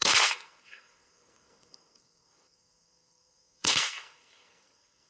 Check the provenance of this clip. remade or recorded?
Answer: remade